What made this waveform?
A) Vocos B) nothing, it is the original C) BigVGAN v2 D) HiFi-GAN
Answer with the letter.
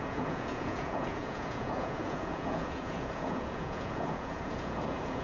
A